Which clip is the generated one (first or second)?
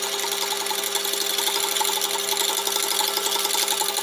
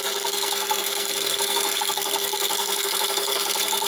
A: second